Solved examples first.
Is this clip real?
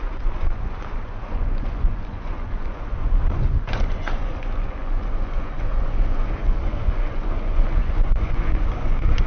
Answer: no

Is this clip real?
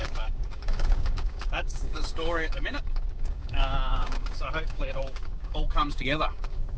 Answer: no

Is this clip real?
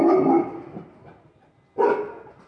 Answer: yes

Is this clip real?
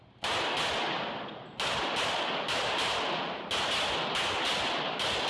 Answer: yes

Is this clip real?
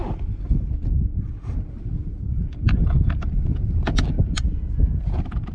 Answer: yes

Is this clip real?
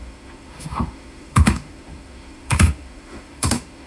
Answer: no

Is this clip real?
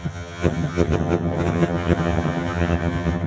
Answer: no